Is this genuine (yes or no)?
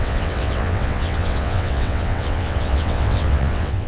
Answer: no